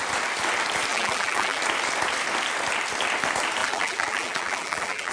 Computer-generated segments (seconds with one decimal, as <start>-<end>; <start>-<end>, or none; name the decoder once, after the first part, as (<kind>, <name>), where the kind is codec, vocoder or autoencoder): 0.9-1.6 (vocoder, BigVGAN v2); 3.6-5.1